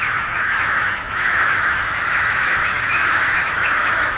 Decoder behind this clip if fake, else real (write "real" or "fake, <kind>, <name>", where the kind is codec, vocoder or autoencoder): fake, autoencoder, DAC-VAE